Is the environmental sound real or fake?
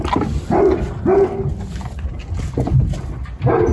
real